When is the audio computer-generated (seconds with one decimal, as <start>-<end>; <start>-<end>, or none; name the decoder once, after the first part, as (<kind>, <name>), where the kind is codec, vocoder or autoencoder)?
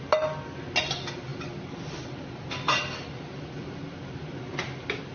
none